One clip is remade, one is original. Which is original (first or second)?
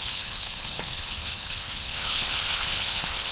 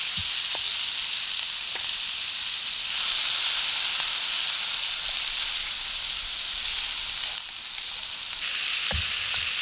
second